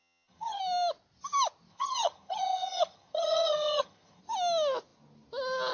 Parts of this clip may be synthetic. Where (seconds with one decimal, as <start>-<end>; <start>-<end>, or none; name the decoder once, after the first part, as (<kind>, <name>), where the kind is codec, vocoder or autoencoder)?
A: 0.0-0.6 (vocoder, HiFi-GAN); 1.7-4.2